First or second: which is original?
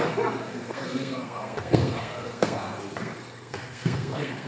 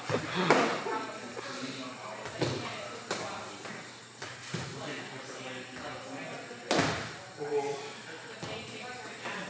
second